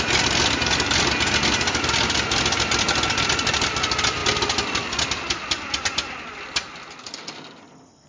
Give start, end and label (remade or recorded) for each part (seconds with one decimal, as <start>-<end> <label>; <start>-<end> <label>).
0.0-8.1 recorded